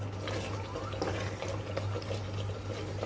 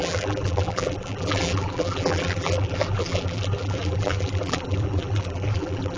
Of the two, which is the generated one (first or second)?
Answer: second